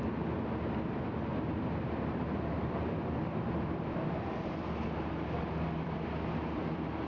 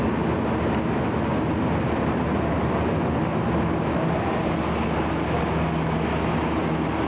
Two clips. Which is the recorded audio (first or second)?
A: second